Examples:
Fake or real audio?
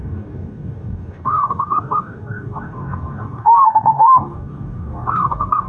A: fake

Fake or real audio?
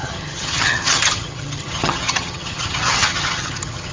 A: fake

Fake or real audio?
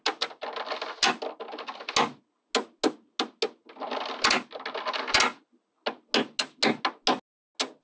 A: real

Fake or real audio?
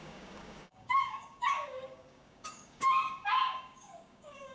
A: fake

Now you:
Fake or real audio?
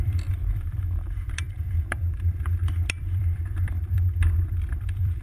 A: fake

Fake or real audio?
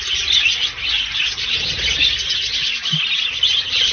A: real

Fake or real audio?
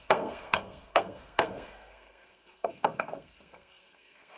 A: fake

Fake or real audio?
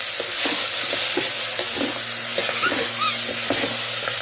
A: real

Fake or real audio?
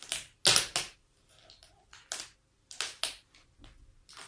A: real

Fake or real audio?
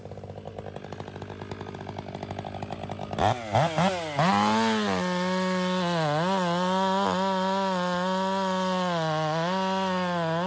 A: real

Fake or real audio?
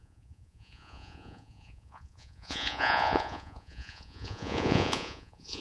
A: fake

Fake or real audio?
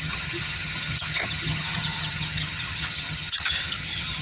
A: fake